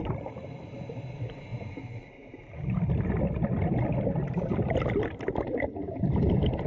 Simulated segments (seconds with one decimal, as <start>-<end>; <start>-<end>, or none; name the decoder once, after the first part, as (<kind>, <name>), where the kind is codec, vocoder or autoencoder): none